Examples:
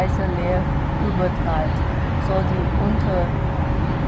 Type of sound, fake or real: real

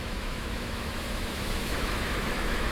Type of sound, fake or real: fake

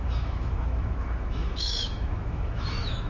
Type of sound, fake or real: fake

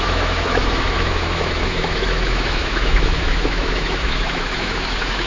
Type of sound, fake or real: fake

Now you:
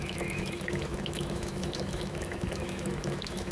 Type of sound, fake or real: fake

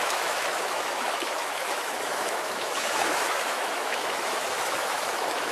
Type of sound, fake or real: fake